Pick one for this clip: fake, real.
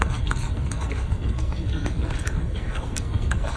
fake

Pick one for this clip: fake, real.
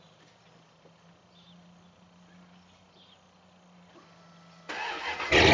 real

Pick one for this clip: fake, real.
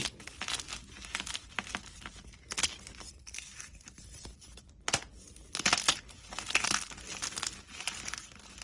real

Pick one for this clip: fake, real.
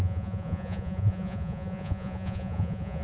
fake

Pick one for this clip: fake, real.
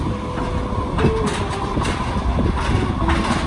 real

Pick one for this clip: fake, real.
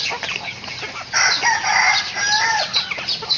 real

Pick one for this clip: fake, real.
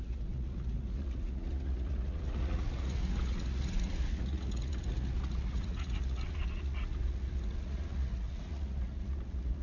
fake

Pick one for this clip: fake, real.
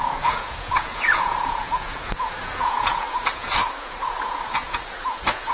fake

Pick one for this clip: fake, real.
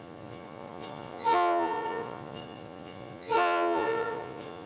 fake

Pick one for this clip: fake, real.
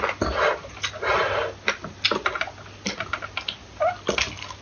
real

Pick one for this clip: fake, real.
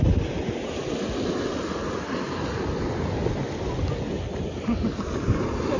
real